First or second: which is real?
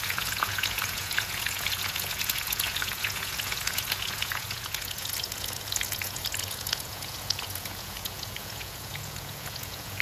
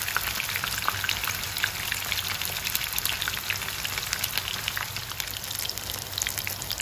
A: second